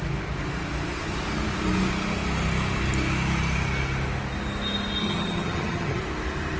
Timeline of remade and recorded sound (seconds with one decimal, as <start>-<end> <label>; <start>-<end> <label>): 0.0-5.0 recorded; 5.0-6.0 remade; 6.0-6.6 recorded